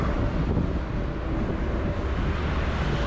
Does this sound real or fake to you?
real